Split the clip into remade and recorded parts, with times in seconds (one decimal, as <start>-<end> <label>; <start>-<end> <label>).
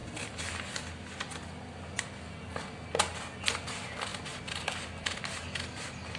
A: 0.0-6.2 recorded